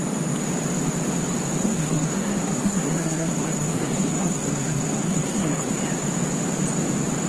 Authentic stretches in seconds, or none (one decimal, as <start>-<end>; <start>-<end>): 0.0-1.6; 5.7-7.3